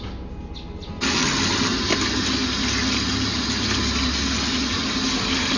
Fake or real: real